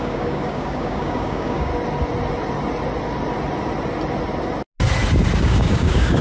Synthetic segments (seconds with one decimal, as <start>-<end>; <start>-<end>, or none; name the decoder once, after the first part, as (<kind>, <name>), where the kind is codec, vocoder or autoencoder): 0.0-1.7 (codec, DAC); 5.4-6.2